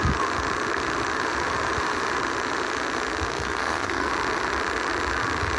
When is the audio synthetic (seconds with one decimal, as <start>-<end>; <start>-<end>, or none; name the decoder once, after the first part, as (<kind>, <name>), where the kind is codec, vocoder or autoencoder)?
3.3-4.1 (codec, SNAC)